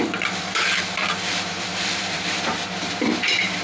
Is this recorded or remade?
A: remade